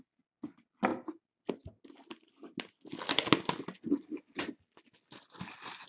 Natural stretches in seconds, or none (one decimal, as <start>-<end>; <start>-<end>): 0.0-5.9

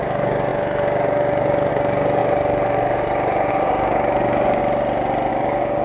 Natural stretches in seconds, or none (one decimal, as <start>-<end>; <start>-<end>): 4.6-5.3

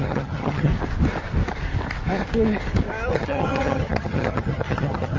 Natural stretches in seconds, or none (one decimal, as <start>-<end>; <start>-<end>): 0.7-3.1

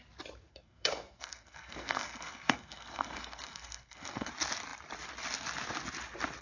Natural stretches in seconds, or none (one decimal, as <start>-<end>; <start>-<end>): 0.0-0.5; 4.3-6.4

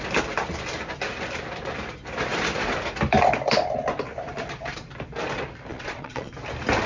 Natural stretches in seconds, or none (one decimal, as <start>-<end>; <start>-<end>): 0.0-5.7; 6.3-6.9

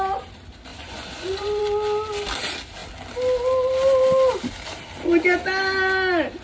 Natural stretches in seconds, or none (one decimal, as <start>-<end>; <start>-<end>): 0.0-0.7; 1.6-6.4

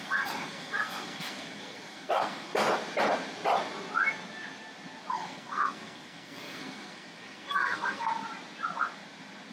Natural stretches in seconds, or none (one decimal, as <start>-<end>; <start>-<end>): 2.5-5.1; 8.1-9.5